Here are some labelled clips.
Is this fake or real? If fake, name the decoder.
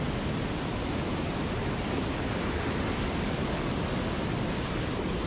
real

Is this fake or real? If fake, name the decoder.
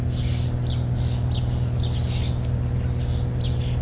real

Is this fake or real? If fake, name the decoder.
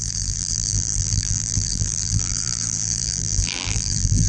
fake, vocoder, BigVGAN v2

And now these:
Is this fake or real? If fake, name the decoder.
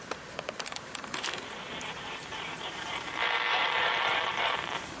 fake, vocoder, BigVGAN v2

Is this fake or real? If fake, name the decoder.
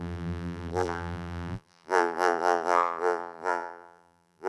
fake, vocoder, BigVGAN v2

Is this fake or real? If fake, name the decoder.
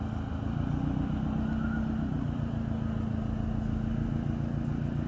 real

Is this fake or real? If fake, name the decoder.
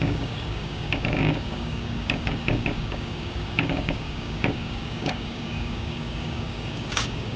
fake, codec, DAC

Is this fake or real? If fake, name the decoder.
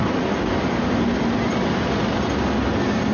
real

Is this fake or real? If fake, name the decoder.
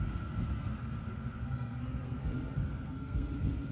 fake, codec, SNAC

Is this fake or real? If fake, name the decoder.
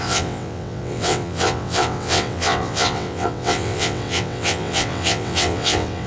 fake, vocoder, WaveNeXt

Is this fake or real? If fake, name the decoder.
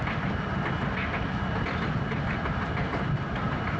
real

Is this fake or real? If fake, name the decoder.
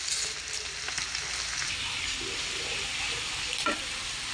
real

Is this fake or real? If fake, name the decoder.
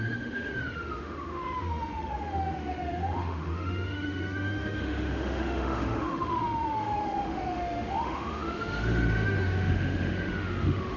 fake, autoencoder, DAC-VAE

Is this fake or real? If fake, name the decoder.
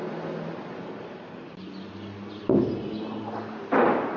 real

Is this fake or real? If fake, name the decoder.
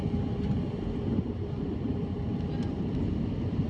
real